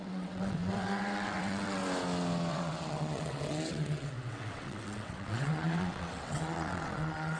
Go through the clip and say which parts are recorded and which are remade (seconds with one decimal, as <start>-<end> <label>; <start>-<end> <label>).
0.0-1.8 remade; 1.8-2.5 recorded; 2.5-7.4 remade